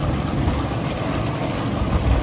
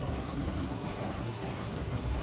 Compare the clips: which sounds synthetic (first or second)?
second